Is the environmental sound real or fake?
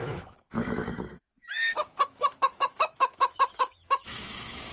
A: fake